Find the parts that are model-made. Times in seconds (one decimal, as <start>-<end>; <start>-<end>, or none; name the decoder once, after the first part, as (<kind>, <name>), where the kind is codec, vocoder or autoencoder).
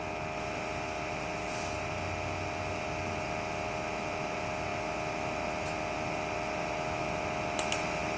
none